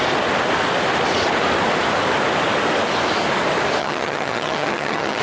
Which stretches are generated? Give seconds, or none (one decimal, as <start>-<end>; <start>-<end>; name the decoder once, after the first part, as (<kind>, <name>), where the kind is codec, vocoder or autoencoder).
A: 3.8-5.2 (vocoder, HiFi-GAN)